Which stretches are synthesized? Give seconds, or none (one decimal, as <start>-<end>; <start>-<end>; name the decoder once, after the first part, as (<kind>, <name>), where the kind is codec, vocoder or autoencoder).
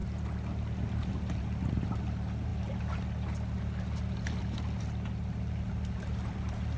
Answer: none